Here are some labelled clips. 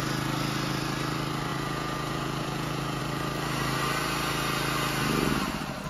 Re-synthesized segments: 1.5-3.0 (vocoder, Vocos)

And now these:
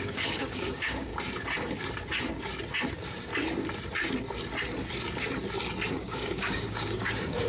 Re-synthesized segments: 0.0-1.1 (codec, DAC); 2.9-3.3; 5.9-7.5

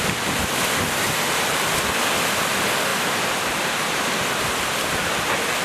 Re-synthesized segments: none